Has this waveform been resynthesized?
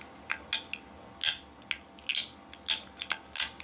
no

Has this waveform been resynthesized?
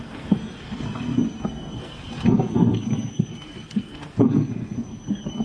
yes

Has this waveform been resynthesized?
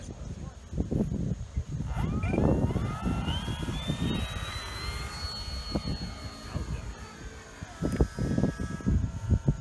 no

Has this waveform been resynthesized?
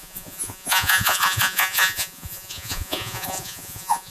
yes